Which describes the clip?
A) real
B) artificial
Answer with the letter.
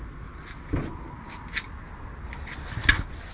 A